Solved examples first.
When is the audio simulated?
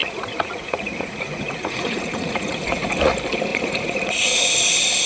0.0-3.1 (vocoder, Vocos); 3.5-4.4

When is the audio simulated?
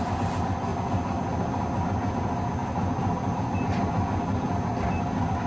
none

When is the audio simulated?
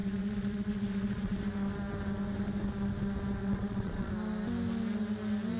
0.0-1.4 (vocoder, Vocos); 3.4-4.1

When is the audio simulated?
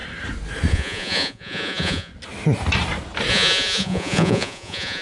0.7-2.1 (vocoder, Vocos); 3.3-5.0